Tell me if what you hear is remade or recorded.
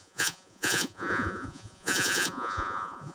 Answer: remade